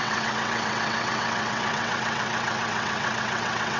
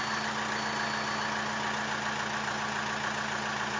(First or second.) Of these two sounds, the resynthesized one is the first